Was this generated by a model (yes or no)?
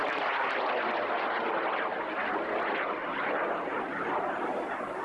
no